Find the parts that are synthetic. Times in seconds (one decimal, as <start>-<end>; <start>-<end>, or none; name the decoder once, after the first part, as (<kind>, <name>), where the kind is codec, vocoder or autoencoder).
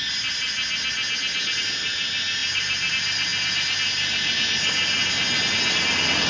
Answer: none